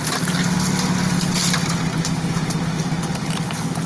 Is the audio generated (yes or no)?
no